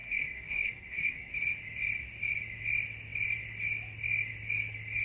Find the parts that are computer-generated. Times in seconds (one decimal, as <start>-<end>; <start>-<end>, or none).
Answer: 0.0-1.3